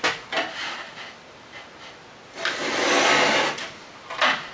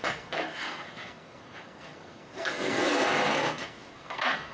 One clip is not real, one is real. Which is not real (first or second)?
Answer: second